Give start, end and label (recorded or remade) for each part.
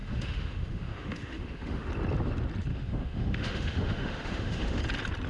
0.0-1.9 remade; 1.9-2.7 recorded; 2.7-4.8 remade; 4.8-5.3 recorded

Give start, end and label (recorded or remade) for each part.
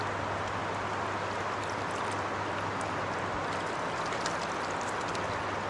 0.0-5.7 recorded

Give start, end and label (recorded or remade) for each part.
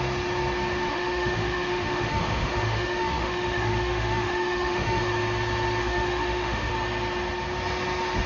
0.0-0.9 recorded; 0.9-5.0 remade; 5.0-5.8 recorded; 5.8-6.7 remade; 6.7-8.3 recorded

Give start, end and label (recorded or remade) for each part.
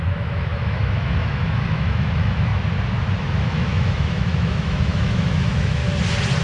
0.0-2.5 remade; 2.5-3.2 recorded; 3.2-5.8 remade; 5.8-6.4 recorded